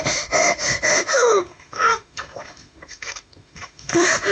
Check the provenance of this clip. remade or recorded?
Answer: remade